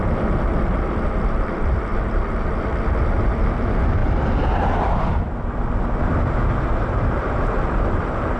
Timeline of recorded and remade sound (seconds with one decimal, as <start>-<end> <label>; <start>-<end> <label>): 0.0-8.4 recorded